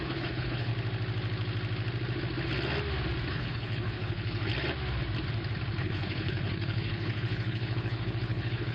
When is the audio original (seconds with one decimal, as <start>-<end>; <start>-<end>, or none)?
0.7-3.3; 4.5-5.8